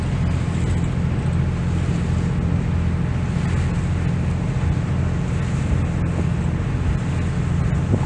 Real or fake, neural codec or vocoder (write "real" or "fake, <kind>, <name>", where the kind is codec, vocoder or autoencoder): real